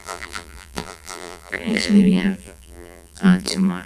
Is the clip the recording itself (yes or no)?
no